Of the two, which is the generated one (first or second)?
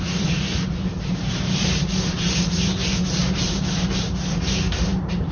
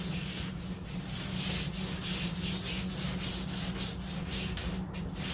first